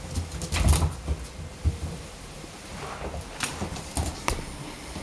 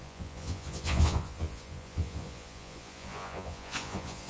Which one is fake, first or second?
second